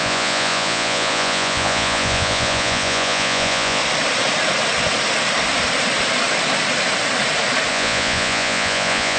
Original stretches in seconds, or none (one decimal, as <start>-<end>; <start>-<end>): 3.8-7.7